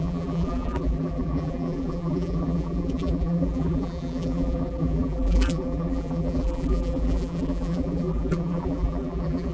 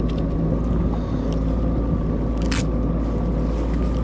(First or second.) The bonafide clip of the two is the second